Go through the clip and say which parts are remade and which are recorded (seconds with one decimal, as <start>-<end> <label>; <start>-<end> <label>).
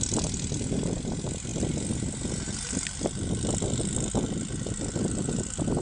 0.0-5.8 recorded